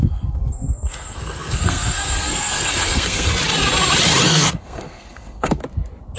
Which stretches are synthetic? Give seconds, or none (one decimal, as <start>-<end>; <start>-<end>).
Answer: 0.0-3.3; 4.3-5.6